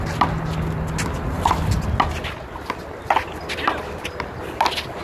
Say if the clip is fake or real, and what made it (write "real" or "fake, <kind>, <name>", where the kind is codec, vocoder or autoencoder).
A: real